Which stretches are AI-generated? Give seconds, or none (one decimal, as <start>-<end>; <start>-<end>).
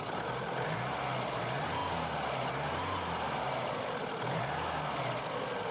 none